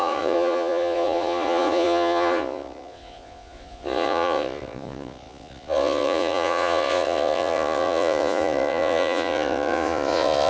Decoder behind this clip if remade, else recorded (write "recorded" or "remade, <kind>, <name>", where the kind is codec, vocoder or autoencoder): remade, vocoder, Vocos